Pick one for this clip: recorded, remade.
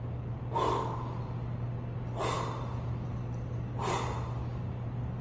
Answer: recorded